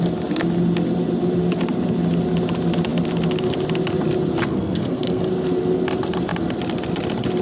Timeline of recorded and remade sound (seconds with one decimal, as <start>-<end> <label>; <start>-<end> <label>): 0.0-4.5 recorded; 4.5-5.3 remade; 5.3-7.4 recorded